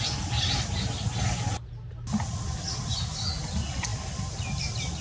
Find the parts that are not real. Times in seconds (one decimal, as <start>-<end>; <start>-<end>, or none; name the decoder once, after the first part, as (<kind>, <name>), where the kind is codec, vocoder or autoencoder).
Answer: none